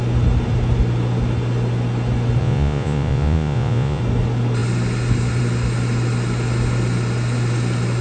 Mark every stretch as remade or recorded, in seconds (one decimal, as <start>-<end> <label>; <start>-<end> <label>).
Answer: 0.0-2.4 recorded; 2.4-4.0 remade; 4.0-8.0 recorded